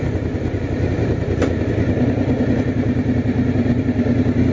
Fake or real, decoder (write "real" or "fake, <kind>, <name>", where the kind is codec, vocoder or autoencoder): real